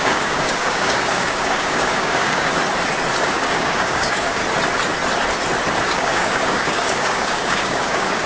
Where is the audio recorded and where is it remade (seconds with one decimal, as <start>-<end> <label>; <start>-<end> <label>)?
0.0-2.5 remade; 2.5-3.2 recorded; 3.2-4.4 remade; 4.4-5.9 recorded; 5.9-8.3 remade